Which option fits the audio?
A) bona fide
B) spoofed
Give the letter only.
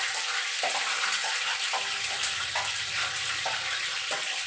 A